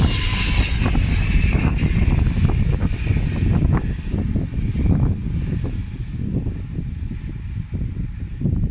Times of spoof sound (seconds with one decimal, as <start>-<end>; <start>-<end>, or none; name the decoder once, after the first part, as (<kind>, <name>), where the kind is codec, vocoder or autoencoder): none